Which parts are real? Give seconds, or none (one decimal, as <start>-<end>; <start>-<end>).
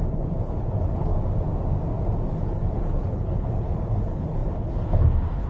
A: 1.1-2.3